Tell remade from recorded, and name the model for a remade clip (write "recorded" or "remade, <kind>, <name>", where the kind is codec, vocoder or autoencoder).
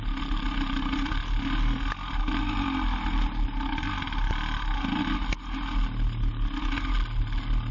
recorded